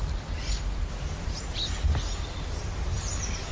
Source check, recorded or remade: recorded